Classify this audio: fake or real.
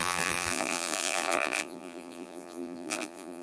fake